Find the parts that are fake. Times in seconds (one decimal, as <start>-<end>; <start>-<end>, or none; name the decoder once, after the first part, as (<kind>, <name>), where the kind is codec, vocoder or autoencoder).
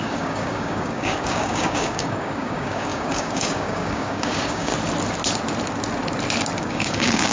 0.0-4.7 (codec, DAC); 6.6-7.3